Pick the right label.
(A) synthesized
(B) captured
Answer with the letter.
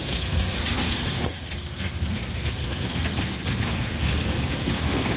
A